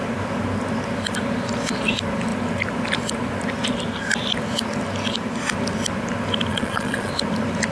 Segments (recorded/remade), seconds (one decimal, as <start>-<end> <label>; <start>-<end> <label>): 0.0-6.5 recorded; 6.5-7.1 remade; 7.1-7.7 recorded